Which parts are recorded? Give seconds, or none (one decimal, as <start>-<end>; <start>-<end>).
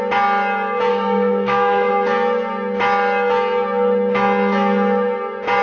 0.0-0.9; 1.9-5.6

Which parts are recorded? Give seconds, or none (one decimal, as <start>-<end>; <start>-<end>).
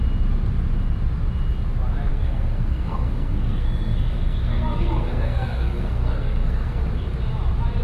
0.0-2.1; 6.8-7.8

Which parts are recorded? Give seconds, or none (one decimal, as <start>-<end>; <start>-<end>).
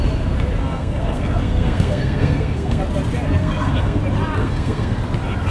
0.0-0.6; 2.8-3.4; 4.0-4.4; 5.0-5.5